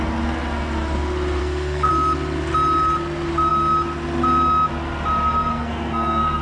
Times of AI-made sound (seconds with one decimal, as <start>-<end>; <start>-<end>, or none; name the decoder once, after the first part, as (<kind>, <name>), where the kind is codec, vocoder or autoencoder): 1.4-1.9 (codec, SNAC); 5.5-6.4